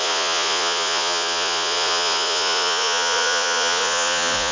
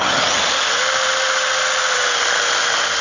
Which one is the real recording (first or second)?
second